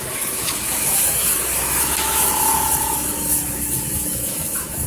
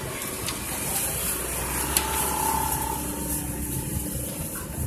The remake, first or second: first